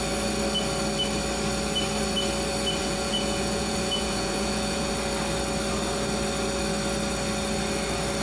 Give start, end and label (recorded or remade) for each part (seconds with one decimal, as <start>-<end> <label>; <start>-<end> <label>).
0.0-2.8 recorded; 2.8-4.9 remade; 4.9-8.2 recorded